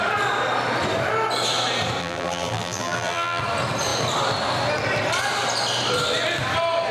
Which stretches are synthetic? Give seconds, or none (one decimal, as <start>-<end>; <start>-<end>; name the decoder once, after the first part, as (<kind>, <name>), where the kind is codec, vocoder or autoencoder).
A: 2.0-3.4 (vocoder, BigVGAN v2)